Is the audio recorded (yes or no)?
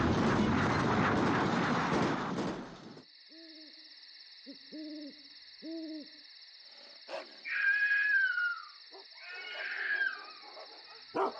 yes